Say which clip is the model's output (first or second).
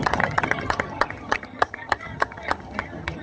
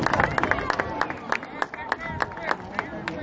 first